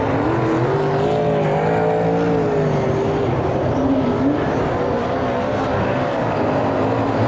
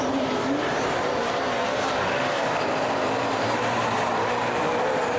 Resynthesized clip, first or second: second